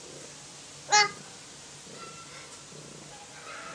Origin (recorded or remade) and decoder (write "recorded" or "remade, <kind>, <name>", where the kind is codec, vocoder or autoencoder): recorded